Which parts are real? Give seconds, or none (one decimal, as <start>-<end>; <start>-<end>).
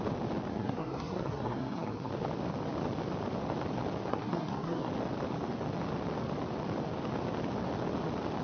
0.0-0.5; 2.1-4.1; 4.9-8.4